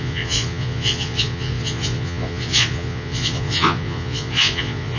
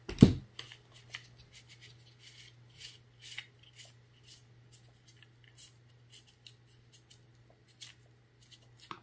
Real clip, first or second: second